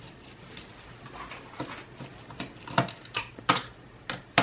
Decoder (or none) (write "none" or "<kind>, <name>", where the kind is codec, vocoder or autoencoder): none